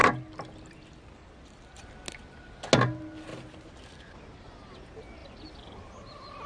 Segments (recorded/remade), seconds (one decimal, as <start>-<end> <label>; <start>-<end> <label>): 0.0-1.8 remade; 1.8-3.3 recorded; 3.3-4.2 remade; 4.2-5.2 recorded; 5.2-5.7 remade; 5.7-6.5 recorded